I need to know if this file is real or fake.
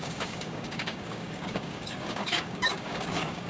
fake